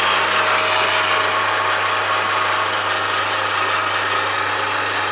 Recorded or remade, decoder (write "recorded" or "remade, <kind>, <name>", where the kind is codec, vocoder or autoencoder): recorded